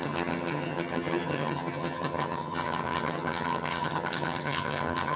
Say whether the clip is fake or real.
fake